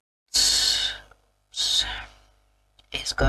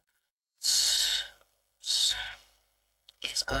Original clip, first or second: first